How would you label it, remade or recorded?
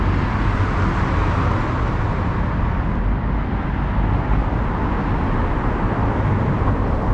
recorded